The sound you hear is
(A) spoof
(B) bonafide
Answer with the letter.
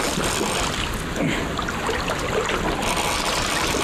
B